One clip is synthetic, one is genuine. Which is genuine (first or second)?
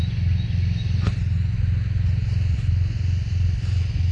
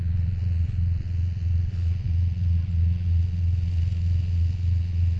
first